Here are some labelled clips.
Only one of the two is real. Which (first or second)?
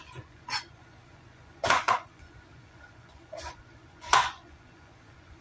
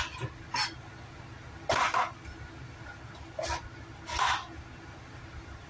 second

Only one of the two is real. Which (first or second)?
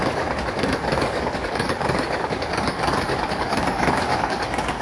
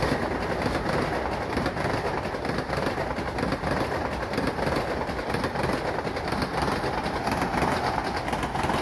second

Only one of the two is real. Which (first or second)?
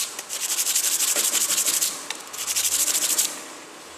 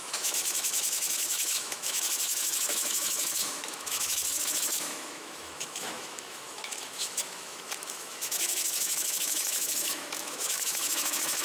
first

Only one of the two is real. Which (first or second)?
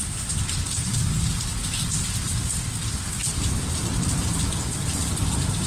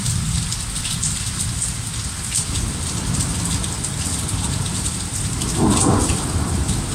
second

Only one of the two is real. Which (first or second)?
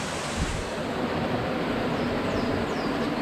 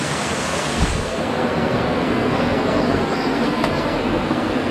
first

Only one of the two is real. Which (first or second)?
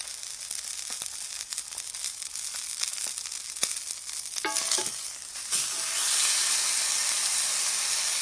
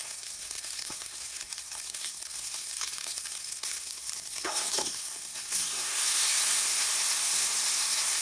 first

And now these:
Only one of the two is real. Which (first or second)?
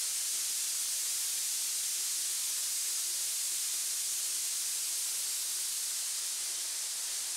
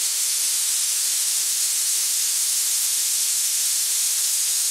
first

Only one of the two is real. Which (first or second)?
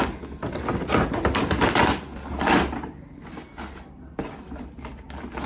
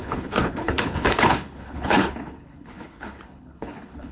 first